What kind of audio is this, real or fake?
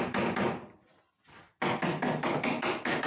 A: real